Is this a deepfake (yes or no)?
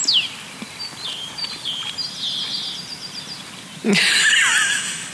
no